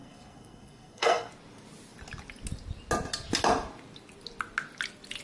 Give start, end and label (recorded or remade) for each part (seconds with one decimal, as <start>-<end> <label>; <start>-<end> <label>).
0.0-1.3 remade; 1.3-5.2 recorded